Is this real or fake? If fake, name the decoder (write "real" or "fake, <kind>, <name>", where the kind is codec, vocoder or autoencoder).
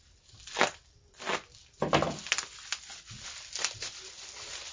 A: real